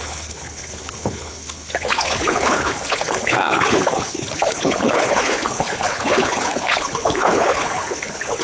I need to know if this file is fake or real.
fake